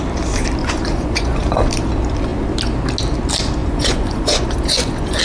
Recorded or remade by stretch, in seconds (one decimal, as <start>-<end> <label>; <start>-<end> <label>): 0.0-0.6 recorded; 0.6-1.5 remade; 1.5-3.6 recorded; 3.6-5.2 remade